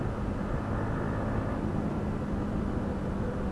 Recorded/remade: recorded